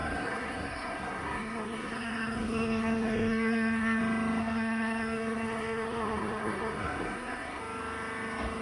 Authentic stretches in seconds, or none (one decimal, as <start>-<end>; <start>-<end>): 4.0-4.4; 7.6-8.6